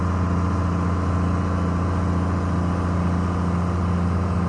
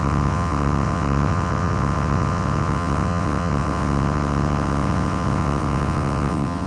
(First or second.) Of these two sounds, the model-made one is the second